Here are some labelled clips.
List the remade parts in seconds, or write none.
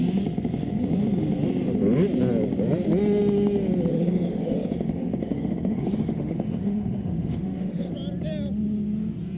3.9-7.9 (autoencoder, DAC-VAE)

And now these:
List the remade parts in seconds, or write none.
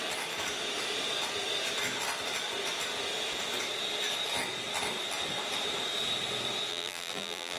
6.7-7.6 (vocoder, BigVGAN v2)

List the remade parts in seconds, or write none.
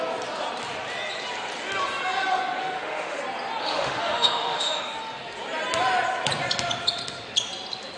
2.6-3.2 (autoencoder, DAC-VAE); 3.6-4.8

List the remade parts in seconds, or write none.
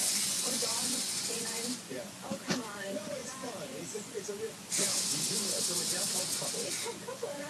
0.0-7.5 (vocoder, Vocos)